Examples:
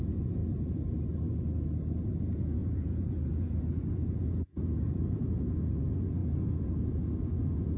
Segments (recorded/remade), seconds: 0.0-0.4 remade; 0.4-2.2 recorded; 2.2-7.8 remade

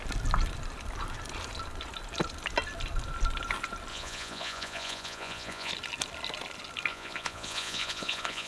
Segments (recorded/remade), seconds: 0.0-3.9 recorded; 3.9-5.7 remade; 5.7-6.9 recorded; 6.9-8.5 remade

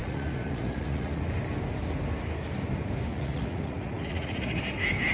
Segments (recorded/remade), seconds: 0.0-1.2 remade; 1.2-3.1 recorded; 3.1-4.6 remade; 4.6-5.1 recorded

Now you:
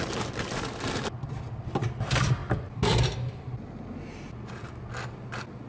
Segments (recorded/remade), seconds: 0.0-5.7 recorded

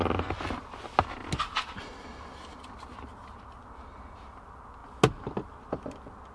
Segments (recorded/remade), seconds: 0.0-6.3 recorded